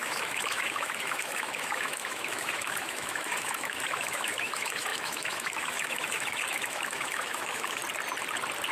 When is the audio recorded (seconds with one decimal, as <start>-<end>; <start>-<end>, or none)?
7.8-8.7